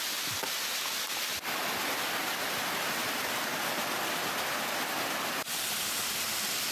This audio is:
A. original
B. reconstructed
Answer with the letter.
A